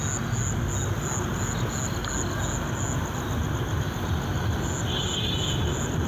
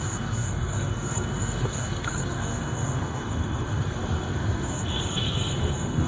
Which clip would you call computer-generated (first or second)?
second